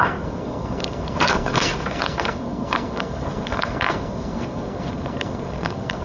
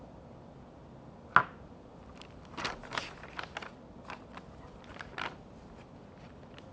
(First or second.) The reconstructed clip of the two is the first